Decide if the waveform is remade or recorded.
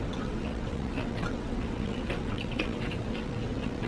remade